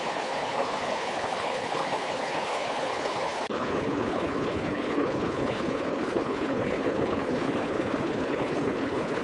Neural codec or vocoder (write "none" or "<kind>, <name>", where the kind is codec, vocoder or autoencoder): codec, HILCodec